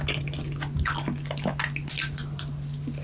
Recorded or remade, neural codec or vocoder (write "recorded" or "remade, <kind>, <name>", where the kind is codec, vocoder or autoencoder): recorded